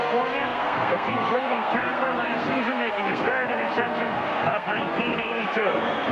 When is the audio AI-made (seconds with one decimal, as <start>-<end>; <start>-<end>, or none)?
0.0-6.1